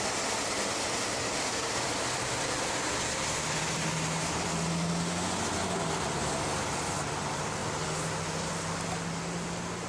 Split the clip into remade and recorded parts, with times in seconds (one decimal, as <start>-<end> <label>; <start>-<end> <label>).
0.0-1.2 recorded; 1.2-3.0 remade; 3.0-5.6 recorded; 5.6-6.3 remade; 6.3-9.9 recorded